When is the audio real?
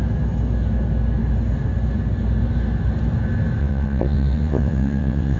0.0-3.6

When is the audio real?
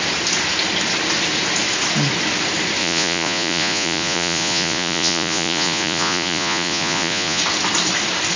0.0-2.8; 7.4-8.4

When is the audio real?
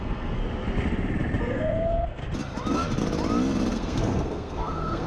0.4-1.4; 2.2-3.7